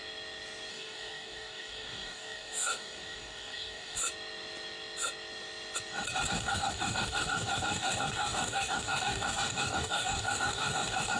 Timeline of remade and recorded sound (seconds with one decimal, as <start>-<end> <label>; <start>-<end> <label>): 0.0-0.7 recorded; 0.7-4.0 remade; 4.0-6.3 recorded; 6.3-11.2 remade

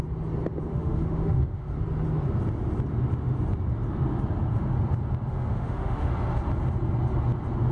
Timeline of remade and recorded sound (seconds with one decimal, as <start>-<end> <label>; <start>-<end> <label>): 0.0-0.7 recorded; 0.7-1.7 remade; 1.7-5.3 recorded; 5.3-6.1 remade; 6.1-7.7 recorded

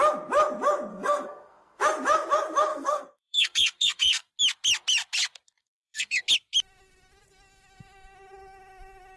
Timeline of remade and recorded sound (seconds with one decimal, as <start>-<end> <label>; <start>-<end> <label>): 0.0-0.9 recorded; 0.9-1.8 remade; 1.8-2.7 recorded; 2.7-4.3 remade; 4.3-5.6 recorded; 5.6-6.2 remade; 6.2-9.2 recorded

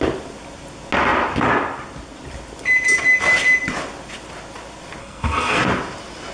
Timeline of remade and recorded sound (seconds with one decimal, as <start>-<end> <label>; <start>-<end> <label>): 0.0-5.0 recorded; 5.0-5.6 remade; 5.6-6.3 recorded

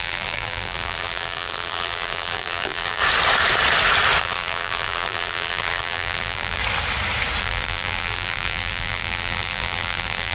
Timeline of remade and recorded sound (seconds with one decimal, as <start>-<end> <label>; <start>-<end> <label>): 0.0-3.0 remade; 3.0-4.2 recorded; 4.2-6.6 remade; 6.6-7.4 recorded; 7.4-10.3 remade

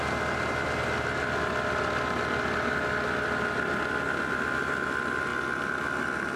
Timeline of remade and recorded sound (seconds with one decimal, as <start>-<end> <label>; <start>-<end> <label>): 0.0-6.4 recorded

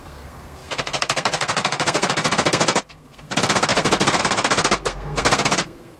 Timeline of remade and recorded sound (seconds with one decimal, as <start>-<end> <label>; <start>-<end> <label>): 0.0-6.0 remade

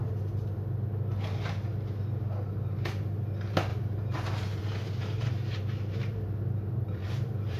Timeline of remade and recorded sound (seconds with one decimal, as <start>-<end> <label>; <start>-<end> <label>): 0.0-3.7 recorded; 3.7-7.6 remade